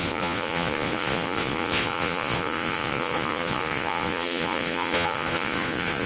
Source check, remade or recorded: remade